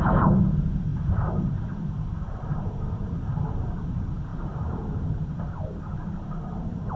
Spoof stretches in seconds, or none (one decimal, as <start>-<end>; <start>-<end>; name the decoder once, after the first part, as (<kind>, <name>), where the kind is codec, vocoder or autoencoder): 0.0-7.0 (vocoder, BigVGAN v2)